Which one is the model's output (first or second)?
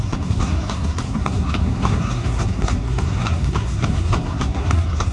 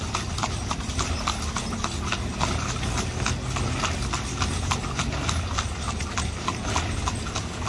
first